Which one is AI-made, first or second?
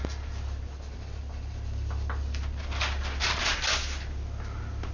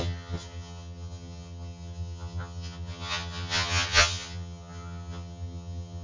second